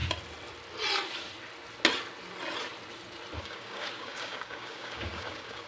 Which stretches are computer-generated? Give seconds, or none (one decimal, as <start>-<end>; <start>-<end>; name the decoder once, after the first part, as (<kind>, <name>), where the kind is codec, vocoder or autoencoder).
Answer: 3.4-5.7 (codec, DAC)